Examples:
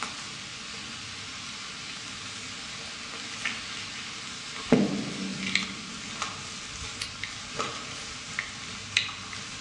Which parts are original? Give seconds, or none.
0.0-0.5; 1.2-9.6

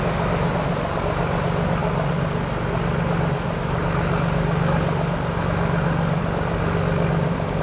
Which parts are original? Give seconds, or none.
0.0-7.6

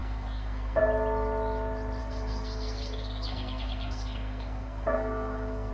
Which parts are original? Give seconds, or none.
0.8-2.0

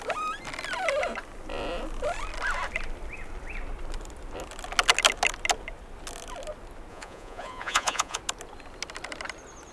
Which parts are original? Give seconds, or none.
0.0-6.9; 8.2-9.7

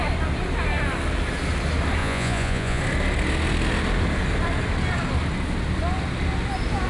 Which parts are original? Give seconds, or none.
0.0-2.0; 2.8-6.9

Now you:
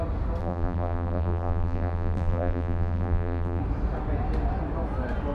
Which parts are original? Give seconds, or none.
0.0-0.4; 3.6-5.3

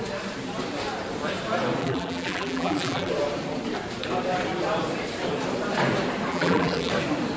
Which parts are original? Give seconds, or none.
0.0-1.8; 3.1-6.3; 6.9-7.4

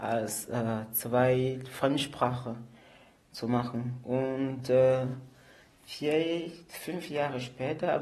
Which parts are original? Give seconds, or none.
0.0-8.0